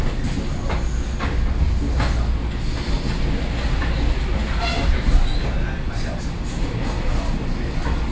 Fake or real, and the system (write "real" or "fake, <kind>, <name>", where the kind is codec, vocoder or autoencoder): real